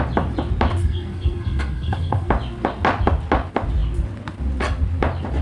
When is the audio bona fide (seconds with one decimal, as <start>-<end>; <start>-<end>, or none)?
0.0-0.8; 2.3-5.4

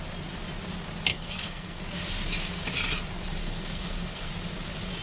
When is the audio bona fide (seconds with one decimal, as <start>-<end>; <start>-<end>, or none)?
0.0-1.1; 1.8-3.4; 4.3-5.0